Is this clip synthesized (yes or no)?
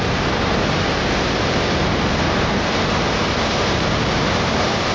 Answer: yes